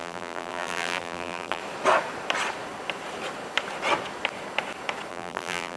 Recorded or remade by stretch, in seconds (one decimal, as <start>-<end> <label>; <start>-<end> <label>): 0.0-1.6 remade; 1.6-5.1 recorded; 5.1-5.8 remade